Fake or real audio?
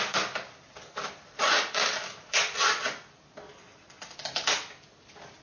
real